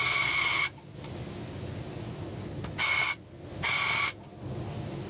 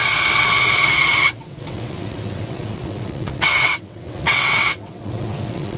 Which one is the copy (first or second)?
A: second